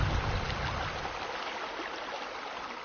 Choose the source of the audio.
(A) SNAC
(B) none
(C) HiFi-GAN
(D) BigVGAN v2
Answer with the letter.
B